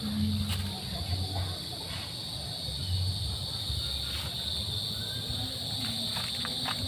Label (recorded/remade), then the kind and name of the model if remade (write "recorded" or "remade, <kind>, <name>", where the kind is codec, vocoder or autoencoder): recorded